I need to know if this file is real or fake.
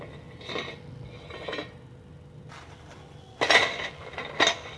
real